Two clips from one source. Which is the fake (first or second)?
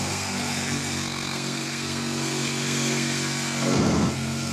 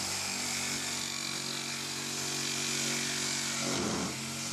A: first